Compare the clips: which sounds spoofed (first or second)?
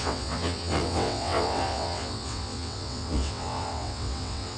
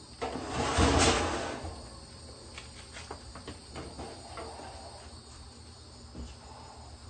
first